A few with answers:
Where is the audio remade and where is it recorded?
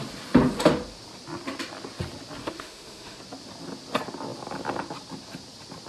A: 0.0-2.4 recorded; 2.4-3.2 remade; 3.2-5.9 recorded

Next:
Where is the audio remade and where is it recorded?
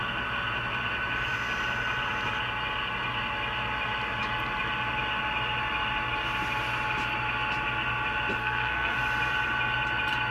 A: 0.0-8.4 recorded; 8.4-9.0 remade; 9.0-10.3 recorded